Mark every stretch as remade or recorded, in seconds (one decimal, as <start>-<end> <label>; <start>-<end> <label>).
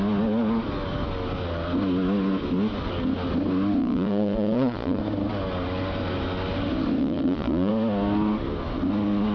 0.0-3.8 recorded; 3.8-5.0 remade; 5.0-7.0 recorded; 7.0-7.7 remade; 7.7-9.3 recorded